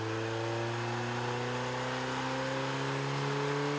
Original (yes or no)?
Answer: yes